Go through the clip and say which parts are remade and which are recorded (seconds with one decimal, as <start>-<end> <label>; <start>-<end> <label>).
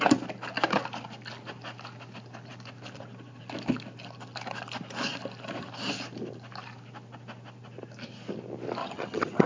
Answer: 0.0-8.8 recorded; 8.8-9.5 remade